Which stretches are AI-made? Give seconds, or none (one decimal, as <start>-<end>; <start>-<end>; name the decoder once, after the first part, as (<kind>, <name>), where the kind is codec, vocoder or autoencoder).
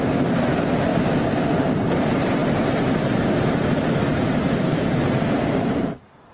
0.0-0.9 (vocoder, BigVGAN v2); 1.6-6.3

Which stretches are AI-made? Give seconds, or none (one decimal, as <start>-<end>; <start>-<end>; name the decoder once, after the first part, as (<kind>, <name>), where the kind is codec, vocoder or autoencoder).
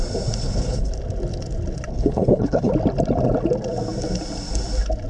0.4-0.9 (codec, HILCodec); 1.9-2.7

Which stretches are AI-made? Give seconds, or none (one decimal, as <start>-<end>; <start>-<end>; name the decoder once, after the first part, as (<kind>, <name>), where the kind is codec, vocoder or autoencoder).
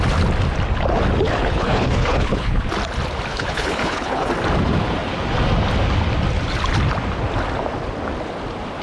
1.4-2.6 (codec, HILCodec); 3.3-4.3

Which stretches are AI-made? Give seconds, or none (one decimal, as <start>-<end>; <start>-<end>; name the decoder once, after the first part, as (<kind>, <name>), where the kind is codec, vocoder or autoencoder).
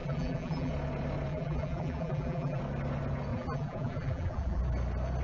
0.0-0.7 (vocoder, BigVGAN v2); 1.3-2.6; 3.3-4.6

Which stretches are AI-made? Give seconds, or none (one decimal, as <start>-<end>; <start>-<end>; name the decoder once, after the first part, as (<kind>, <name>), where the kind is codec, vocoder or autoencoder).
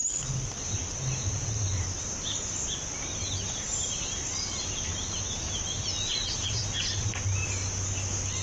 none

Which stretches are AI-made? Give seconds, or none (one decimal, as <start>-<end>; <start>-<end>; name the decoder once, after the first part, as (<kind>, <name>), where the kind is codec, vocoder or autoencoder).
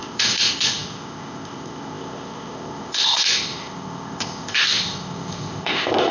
0.0-6.1 (codec, ZipCodec)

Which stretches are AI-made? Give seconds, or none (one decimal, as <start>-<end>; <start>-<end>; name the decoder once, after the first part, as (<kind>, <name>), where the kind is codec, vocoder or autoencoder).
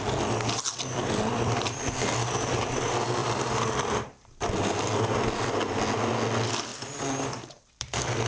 0.7-1.9 (vocoder, BigVGAN v2); 3.2-5.5; 6.7-8.3